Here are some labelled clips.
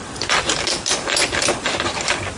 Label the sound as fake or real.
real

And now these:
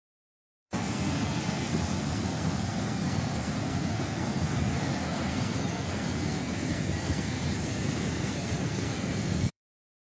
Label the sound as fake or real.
fake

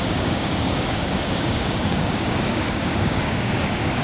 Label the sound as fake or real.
fake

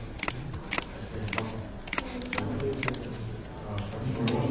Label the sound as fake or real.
real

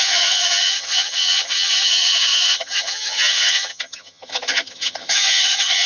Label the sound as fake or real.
fake